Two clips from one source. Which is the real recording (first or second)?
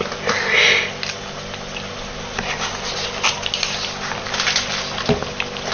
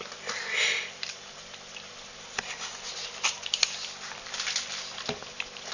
first